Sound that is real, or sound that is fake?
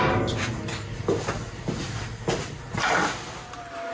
real